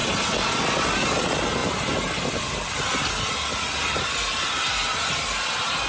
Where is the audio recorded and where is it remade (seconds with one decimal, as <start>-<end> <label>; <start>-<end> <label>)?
0.0-5.9 recorded